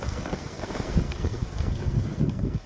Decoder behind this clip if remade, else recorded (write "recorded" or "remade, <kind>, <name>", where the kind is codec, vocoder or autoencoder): remade, codec, SNAC